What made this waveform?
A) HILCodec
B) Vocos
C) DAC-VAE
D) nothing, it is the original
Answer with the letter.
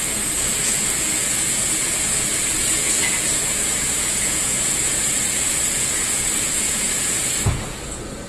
B